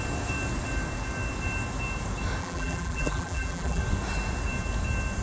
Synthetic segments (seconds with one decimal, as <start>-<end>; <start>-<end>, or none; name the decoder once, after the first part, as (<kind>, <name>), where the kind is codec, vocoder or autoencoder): 2.4-3.8 (vocoder, BigVGAN v2)